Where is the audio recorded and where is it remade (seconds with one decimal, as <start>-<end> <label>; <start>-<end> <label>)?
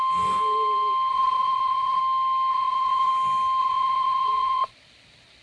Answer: 0.0-1.1 recorded; 1.1-2.0 remade; 2.0-2.5 recorded; 2.5-3.1 remade; 3.1-3.6 recorded; 3.6-4.7 remade; 4.7-5.4 recorded